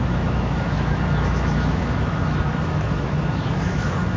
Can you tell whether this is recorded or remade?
remade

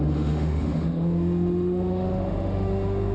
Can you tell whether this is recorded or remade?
remade